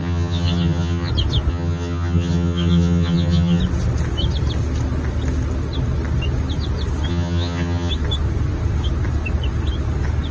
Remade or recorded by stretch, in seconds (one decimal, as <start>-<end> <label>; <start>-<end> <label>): 0.0-1.1 remade; 1.1-1.5 recorded; 1.5-3.6 remade; 3.6-7.1 recorded; 7.1-7.9 remade; 7.9-10.3 recorded